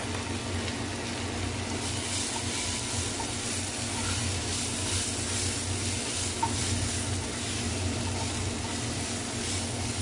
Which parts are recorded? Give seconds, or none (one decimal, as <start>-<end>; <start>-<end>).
0.0-10.0